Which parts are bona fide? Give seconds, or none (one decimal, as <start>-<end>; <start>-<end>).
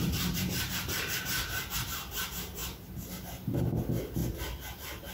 0.0-5.1